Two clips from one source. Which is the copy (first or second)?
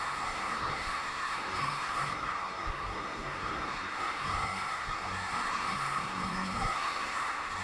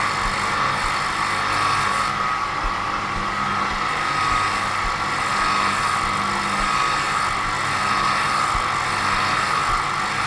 first